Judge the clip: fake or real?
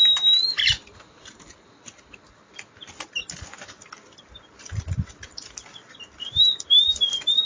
real